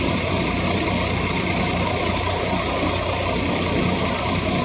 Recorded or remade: recorded